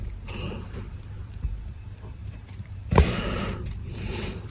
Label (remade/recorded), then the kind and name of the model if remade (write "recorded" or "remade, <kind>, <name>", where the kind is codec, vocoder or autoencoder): remade, vocoder, BigVGAN v2